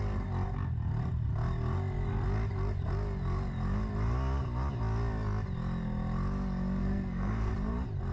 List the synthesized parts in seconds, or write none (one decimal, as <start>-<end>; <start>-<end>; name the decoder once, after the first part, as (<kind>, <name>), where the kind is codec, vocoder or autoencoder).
6.8-7.5 (codec, SNAC)